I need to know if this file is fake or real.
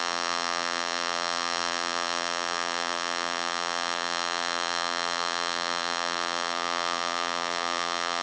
fake